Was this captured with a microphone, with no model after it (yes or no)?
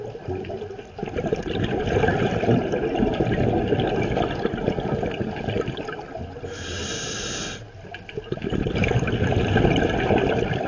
yes